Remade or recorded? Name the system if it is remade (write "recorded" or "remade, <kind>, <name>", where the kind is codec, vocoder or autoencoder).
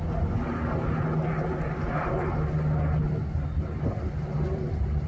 recorded